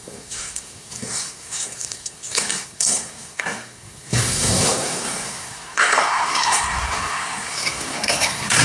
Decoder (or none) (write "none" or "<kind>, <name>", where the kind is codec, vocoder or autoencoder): codec, SNAC